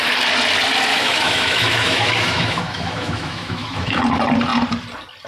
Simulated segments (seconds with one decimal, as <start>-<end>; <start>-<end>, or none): 0.9-4.0